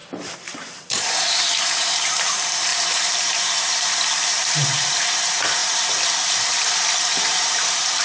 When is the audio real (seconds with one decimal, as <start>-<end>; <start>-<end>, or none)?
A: 5.6-7.2